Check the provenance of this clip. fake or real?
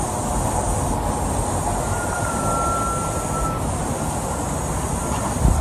real